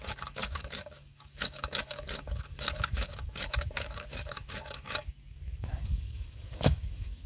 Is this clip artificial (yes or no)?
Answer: yes